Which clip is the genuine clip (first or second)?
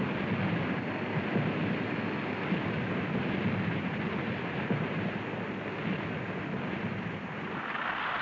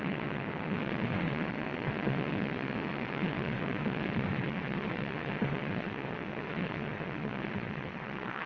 first